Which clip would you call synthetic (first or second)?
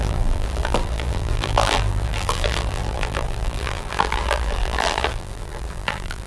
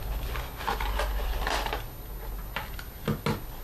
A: first